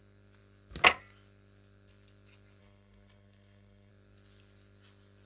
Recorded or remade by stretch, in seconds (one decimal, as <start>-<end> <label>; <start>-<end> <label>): 0.0-2.6 recorded; 2.6-3.9 remade; 3.9-5.3 recorded